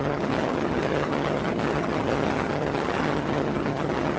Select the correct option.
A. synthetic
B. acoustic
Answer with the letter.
A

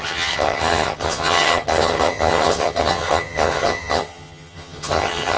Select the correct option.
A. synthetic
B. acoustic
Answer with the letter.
A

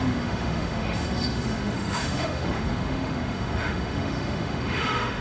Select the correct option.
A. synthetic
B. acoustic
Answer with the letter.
A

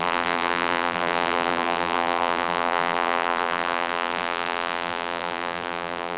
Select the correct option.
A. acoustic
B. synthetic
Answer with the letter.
B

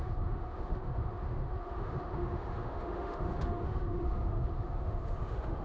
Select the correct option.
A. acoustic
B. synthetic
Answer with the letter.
B